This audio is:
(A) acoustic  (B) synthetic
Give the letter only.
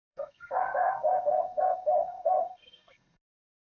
B